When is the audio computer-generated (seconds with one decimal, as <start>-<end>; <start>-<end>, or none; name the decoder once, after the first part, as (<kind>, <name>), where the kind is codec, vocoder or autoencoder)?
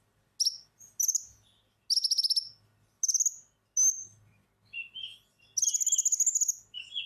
none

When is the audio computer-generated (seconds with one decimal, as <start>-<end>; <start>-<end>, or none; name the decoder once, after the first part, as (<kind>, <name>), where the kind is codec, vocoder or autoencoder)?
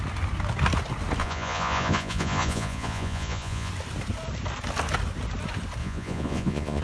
1.2-3.7 (vocoder, Vocos); 5.8-6.8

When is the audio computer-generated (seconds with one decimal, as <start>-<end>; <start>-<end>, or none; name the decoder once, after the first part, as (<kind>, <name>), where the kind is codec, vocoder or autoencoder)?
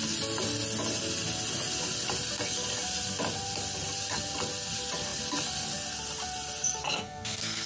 6.8-7.7 (codec, SNAC)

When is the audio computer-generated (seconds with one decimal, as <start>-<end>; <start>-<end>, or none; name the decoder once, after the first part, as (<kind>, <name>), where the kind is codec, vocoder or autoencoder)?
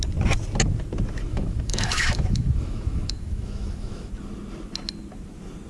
1.3-4.1 (autoencoder, DAC-VAE)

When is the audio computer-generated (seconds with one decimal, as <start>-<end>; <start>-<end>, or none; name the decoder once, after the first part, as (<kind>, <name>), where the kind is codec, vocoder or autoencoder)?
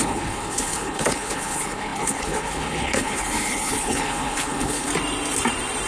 0.0-4.9 (codec, HILCodec)